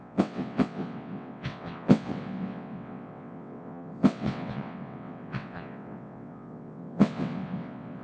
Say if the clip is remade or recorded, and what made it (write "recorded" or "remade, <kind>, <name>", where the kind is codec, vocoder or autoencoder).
remade, vocoder, WaveNeXt